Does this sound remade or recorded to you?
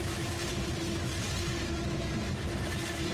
recorded